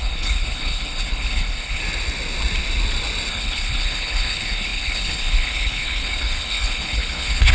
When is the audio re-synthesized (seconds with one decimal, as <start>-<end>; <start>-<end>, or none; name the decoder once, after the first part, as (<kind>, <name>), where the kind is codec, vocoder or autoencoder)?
0.0-1.8 (codec, HILCodec); 3.3-7.5